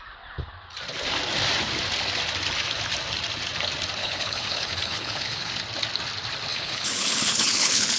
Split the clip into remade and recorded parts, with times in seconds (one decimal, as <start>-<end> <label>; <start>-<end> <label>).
0.0-4.0 recorded; 4.0-5.5 remade; 5.5-6.5 recorded; 6.5-8.0 remade